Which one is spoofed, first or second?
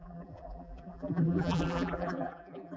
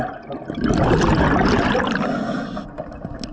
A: first